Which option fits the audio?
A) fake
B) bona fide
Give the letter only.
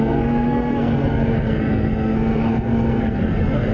A